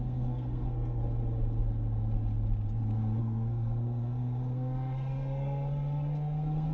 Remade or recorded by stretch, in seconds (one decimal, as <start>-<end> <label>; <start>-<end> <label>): 0.0-1.0 remade; 1.0-3.2 recorded; 3.2-6.7 remade